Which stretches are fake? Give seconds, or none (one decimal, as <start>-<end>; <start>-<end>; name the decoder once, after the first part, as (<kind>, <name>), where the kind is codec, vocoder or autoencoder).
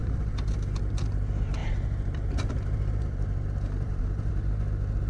0.0-0.8 (vocoder, BigVGAN v2); 1.6-4.3